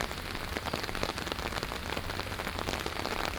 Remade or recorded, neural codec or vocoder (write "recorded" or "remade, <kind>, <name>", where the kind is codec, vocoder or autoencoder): recorded